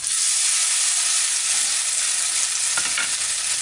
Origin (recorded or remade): recorded